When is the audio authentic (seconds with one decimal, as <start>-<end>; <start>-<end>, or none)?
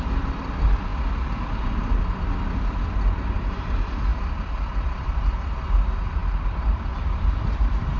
0.9-2.0